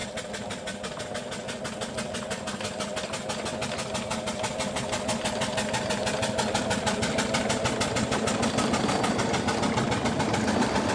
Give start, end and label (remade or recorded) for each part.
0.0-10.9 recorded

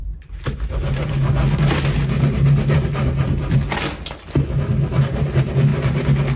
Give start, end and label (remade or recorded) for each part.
0.0-6.4 recorded

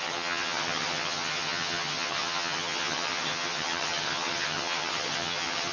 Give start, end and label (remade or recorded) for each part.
0.0-5.7 remade

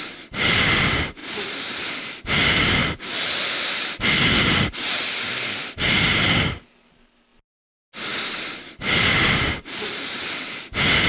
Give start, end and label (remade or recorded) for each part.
0.0-9.2 recorded; 9.2-10.2 remade; 10.2-11.1 recorded

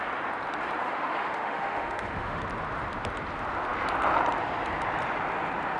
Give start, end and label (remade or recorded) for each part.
0.0-0.8 recorded; 0.8-2.4 remade; 2.4-5.8 recorded